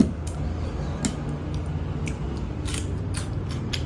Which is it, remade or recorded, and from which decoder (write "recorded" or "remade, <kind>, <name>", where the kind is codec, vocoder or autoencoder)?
recorded